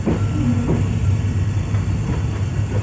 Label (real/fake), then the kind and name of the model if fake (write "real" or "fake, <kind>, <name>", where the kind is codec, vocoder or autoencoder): real